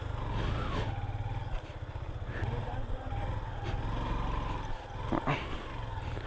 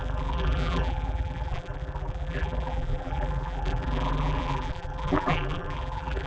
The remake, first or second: second